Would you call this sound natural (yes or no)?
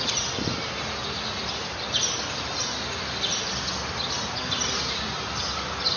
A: yes